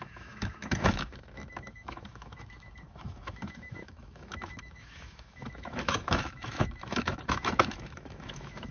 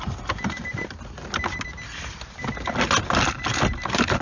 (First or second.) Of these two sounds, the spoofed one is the first